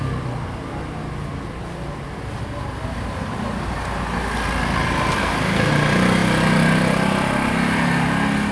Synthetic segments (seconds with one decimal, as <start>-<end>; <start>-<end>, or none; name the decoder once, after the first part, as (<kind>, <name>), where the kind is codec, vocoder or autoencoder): 5.2-5.7 (codec, SNAC)